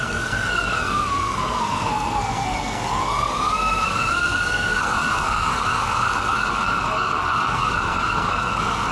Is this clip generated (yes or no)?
yes